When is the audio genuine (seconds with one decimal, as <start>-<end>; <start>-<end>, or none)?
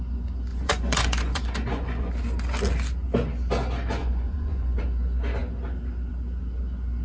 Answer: 0.0-0.5; 2.1-4.0; 4.8-7.0